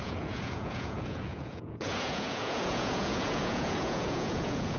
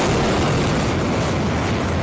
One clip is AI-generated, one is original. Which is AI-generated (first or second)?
first